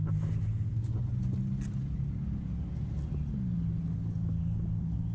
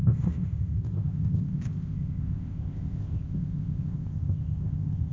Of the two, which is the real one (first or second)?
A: first